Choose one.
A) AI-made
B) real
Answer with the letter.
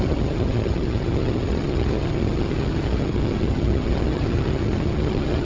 A